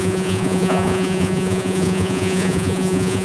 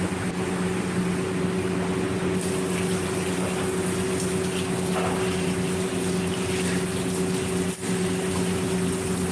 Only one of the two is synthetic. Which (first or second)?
first